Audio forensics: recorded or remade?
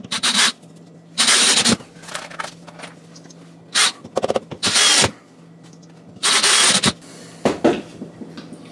recorded